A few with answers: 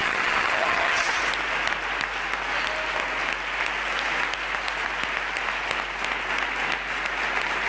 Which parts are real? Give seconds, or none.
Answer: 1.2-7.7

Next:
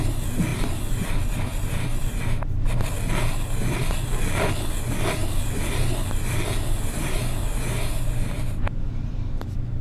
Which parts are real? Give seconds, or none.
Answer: 0.0-9.8

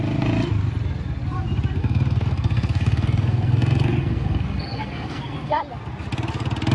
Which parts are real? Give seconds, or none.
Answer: 0.0-1.8; 5.6-6.7